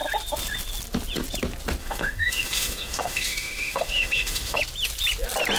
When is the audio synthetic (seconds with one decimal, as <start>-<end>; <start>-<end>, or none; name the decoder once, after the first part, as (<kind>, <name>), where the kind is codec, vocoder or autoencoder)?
1.8-4.6 (autoencoder, DAC-VAE)